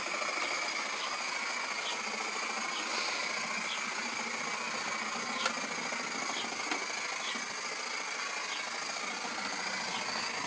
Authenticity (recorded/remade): recorded